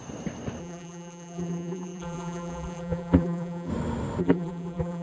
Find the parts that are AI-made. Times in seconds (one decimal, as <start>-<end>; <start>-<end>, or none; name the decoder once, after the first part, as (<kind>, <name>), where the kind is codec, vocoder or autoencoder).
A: 0.6-3.7 (vocoder, BigVGAN v2); 4.2-5.0